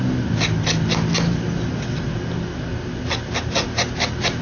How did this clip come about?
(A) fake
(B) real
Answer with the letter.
B